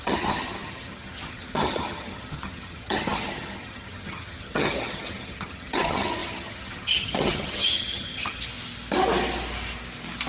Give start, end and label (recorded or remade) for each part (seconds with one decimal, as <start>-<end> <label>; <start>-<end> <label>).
0.0-8.5 remade; 8.5-10.3 recorded